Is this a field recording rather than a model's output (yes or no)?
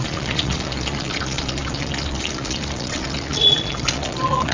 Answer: no